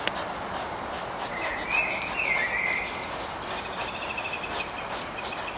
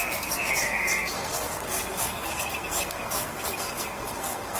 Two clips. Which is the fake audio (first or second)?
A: second